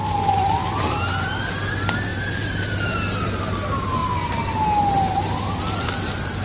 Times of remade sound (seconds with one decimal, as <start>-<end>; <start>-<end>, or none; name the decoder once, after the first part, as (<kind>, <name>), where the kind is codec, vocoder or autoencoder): 2.1-2.7 (vocoder, BigVGAN v2)

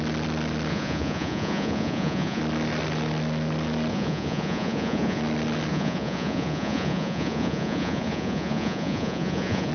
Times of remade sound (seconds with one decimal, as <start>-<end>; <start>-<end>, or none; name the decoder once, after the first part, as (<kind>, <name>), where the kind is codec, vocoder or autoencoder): 0.7-2.4 (vocoder, Vocos); 3.9-5.2; 5.7-9.7

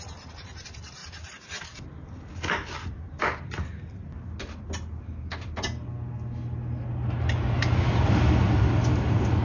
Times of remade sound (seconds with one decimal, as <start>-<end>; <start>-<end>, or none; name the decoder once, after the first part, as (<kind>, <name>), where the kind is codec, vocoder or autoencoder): none

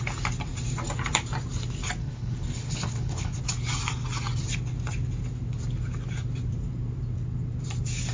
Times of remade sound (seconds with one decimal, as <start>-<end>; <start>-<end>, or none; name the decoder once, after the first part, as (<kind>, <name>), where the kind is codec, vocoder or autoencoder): 2.0-3.4 (codec, HILCodec)

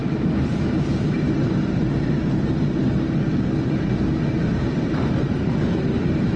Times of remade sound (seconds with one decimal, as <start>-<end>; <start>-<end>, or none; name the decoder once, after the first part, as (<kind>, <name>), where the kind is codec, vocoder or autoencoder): 4.5-6.4 (vocoder, BigVGAN v2)

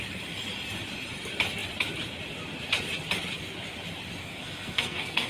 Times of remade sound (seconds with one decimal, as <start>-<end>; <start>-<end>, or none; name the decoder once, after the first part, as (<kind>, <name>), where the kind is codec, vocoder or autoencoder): 4.2-5.3 (codec, SNAC)

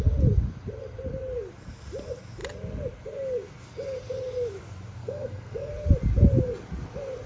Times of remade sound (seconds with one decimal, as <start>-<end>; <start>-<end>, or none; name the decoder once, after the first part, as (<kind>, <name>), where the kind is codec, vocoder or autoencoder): 5.0-5.7 (codec, SNAC)

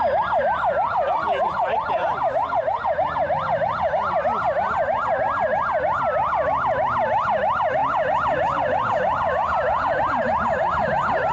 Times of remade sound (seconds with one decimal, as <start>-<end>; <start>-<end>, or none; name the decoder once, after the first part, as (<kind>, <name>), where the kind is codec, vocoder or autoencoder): 7.8-10.0 (vocoder, Vocos)